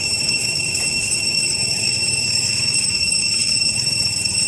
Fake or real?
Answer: fake